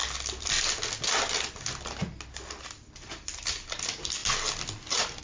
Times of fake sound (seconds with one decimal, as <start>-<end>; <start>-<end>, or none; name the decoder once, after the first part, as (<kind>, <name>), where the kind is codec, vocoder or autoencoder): none